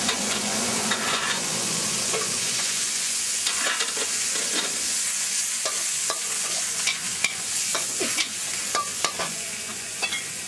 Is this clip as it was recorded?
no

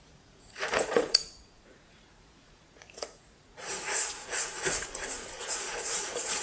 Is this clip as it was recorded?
no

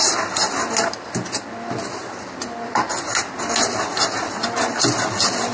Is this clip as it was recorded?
yes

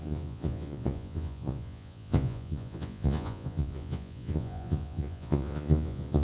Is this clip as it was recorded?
no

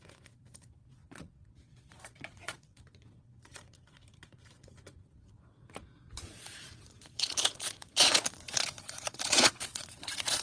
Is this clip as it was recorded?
no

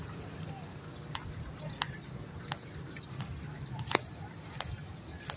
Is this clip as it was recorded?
yes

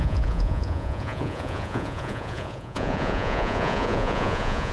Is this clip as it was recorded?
no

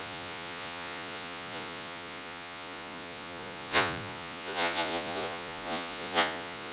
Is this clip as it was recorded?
no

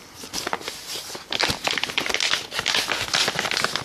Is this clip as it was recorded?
yes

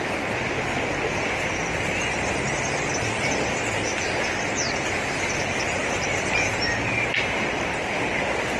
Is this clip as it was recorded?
yes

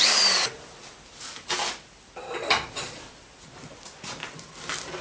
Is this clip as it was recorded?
yes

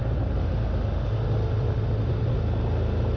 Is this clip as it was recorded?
yes